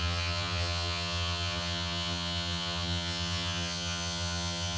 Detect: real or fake fake